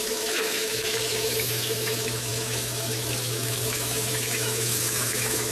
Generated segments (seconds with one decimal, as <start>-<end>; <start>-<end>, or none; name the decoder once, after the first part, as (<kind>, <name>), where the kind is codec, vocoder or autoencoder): 0.0-5.5 (autoencoder, DAC-VAE)